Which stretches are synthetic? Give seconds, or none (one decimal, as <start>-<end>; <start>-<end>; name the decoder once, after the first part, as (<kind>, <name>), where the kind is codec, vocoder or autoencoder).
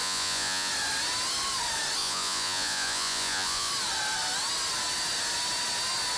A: 0.0-0.7 (vocoder, Vocos); 2.0-3.7